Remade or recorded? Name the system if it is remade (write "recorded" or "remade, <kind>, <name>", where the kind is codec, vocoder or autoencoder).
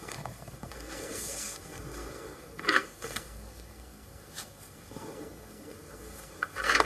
remade, codec, SNAC